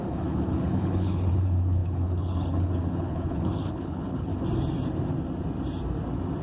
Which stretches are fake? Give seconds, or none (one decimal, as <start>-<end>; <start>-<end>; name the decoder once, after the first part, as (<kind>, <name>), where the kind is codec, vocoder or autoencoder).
0.0-4.3 (codec, HILCodec)